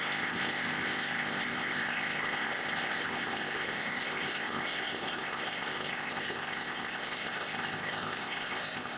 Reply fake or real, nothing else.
fake